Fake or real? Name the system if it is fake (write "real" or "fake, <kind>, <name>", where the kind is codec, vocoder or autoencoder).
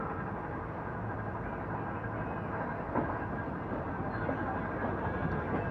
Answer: real